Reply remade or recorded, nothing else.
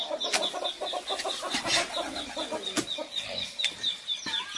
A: recorded